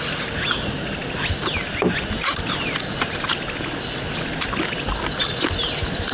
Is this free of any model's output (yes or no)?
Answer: yes